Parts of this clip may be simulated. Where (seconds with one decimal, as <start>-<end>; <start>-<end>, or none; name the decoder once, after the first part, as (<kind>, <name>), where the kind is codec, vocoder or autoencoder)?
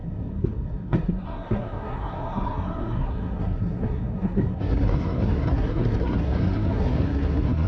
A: 0.0-7.7 (codec, SNAC)